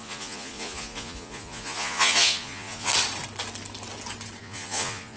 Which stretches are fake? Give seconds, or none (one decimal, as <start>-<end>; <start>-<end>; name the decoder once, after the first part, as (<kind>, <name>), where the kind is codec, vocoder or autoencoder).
0.0-2.9 (vocoder, Vocos); 4.4-5.2